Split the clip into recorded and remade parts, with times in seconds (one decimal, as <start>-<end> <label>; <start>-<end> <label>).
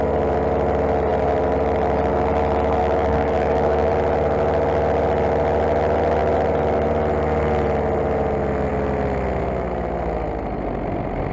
0.0-2.8 recorded; 2.8-3.9 remade; 3.9-11.3 recorded